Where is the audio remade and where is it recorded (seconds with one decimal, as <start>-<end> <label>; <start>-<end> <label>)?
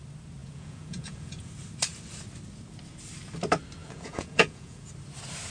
0.0-0.4 recorded; 0.4-1.5 remade; 1.5-3.8 recorded; 3.8-4.9 remade; 4.9-5.5 recorded